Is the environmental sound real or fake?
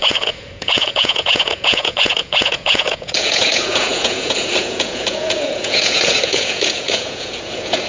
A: fake